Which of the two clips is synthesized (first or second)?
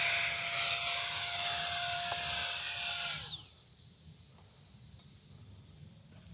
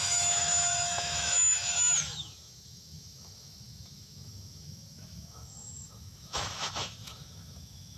second